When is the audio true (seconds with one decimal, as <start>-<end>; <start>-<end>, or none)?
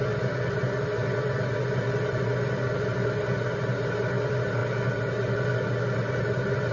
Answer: 0.0-4.6; 5.3-6.7